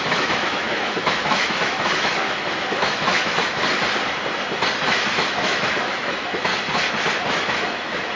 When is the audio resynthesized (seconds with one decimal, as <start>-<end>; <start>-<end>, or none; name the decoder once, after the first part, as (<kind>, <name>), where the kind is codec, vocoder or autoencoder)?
0.0-3.6 (autoencoder, DAC-VAE); 4.9-6.5; 7.3-8.2